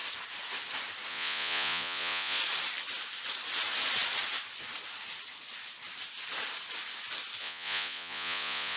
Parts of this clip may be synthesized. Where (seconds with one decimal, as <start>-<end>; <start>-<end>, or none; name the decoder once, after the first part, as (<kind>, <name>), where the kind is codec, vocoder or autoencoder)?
1.1-2.4 (vocoder, Vocos); 7.4-8.8